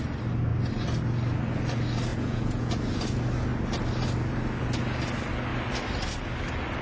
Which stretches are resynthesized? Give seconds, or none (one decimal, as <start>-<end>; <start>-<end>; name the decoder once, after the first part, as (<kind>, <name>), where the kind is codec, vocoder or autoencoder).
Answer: 2.1-2.7 (vocoder, Vocos)